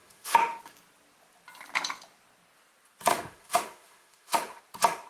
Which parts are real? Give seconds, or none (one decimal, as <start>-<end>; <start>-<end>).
0.6-3.1; 4.6-5.1